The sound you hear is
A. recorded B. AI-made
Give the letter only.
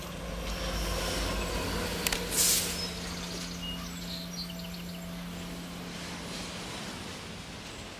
A